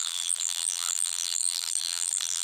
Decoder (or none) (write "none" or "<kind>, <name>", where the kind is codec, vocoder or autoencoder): vocoder, BigVGAN v2